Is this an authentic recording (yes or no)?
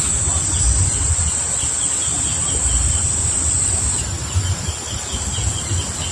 yes